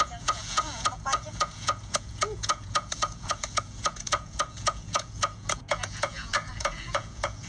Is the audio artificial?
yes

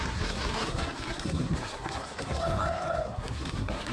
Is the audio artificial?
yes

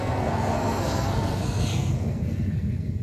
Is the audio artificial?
yes